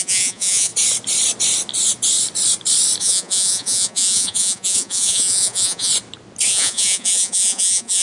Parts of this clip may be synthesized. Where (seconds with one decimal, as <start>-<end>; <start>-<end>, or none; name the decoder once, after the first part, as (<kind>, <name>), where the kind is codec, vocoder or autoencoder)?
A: 0.0-0.7 (vocoder, Vocos); 3.0-5.9; 6.5-8.0